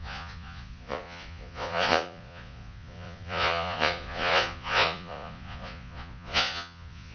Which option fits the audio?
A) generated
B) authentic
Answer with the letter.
A